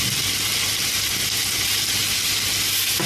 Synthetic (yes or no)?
no